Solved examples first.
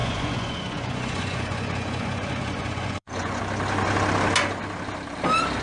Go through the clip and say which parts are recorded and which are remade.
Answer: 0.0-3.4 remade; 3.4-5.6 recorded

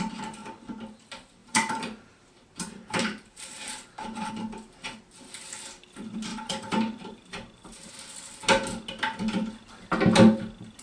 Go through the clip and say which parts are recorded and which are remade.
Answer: 0.0-1.4 recorded; 1.4-4.3 remade; 4.3-6.3 recorded; 6.3-7.9 remade; 7.9-10.8 recorded

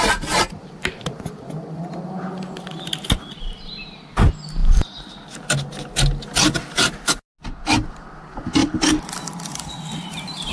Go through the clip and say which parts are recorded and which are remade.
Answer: 0.0-8.6 recorded; 8.6-10.5 remade

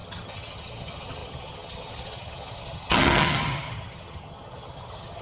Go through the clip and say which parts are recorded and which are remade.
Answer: 0.0-5.2 remade

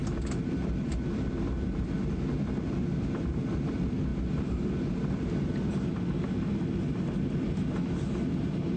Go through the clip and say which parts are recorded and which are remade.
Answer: 0.0-8.8 recorded